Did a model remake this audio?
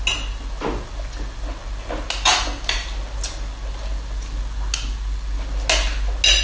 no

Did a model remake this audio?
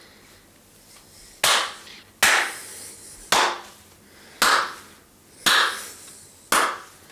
no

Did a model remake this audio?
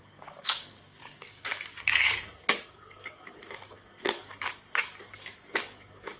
yes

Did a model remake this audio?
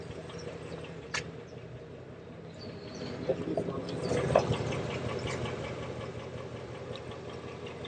no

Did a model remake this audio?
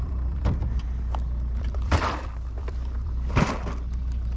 yes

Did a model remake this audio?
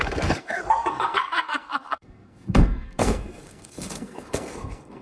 yes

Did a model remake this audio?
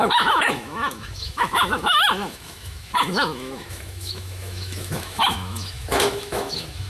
yes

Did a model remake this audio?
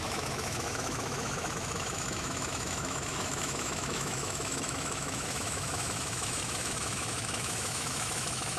yes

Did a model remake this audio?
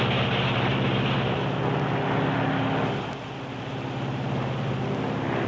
no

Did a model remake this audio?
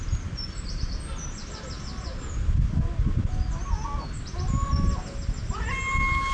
no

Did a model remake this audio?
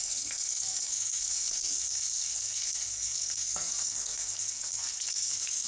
yes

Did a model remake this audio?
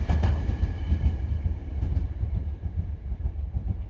yes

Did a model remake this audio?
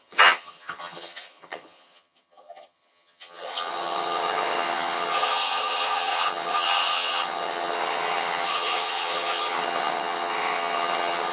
yes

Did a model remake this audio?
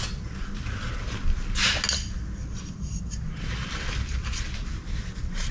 no